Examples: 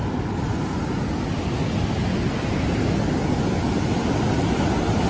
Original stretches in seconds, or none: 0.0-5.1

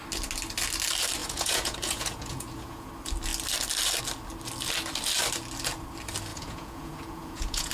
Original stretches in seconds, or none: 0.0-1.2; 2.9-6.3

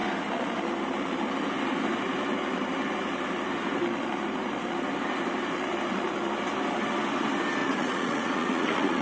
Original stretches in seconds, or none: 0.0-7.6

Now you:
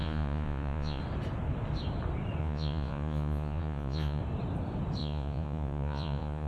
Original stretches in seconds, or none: 1.0-2.4; 4.2-5.0

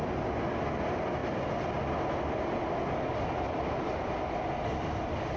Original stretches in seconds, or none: 0.0-5.4

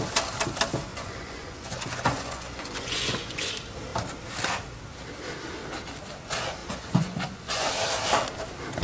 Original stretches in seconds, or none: 0.0-0.9; 3.5-6.6; 7.7-8.8